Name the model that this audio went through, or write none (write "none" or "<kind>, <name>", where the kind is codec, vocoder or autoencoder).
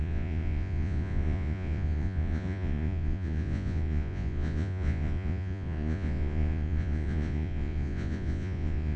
vocoder, Vocos